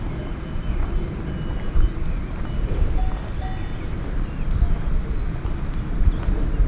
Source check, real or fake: real